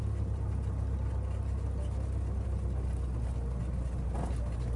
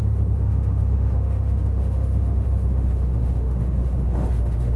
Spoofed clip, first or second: second